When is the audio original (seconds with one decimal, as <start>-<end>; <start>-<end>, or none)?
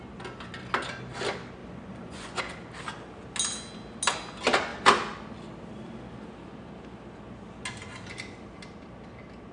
0.0-1.6; 2.4-9.5